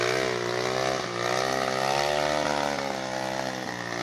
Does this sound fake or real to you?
real